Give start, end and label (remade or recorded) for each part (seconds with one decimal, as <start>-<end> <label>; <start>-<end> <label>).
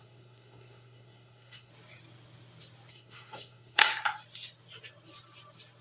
0.0-1.7 remade; 1.7-2.9 recorded; 2.9-3.9 remade; 3.9-5.8 recorded